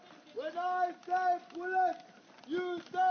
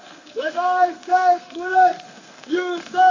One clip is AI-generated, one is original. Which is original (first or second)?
first